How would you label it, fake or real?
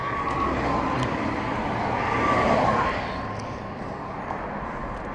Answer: real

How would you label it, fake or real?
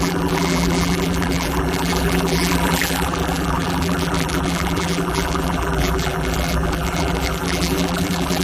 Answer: fake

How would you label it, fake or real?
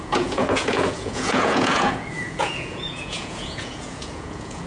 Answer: fake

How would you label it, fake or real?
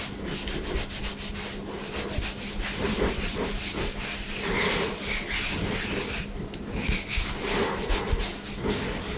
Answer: real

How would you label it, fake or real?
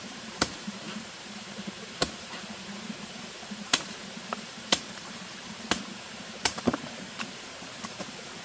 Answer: fake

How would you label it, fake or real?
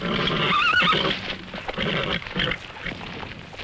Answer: real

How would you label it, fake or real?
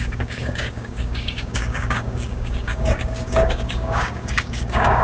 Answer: fake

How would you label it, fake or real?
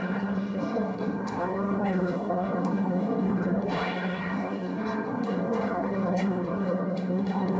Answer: fake